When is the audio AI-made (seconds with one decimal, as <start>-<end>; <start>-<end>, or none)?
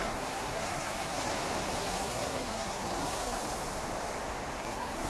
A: 0.0-1.3; 1.8-3.4; 4.6-5.1